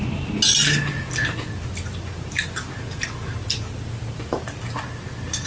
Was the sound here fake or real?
real